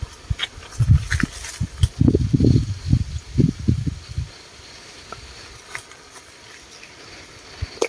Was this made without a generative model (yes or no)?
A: yes